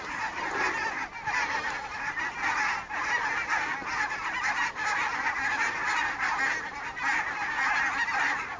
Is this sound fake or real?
real